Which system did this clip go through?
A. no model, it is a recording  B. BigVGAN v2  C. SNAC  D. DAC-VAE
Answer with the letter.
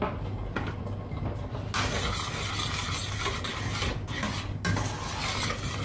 A